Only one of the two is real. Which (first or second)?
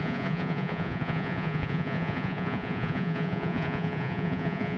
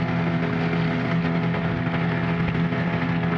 second